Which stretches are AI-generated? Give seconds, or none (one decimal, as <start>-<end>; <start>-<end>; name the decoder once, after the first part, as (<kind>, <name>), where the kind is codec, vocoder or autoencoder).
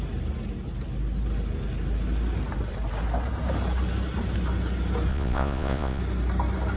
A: 5.1-6.0 (vocoder, Vocos)